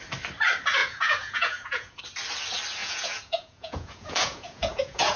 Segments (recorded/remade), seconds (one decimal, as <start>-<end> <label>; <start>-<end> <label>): 0.0-0.8 recorded; 0.8-2.0 remade; 2.0-2.8 recorded; 2.8-5.2 remade